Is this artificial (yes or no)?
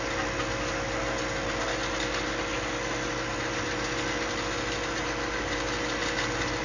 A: no